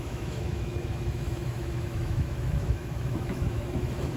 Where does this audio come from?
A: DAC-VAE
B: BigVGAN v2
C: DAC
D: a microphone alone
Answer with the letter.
A